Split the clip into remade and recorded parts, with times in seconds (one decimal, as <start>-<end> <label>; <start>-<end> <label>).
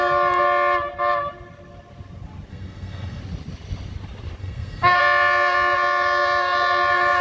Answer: 0.0-2.5 recorded; 2.5-3.2 remade; 3.2-4.4 recorded; 4.4-5.0 remade; 5.0-7.2 recorded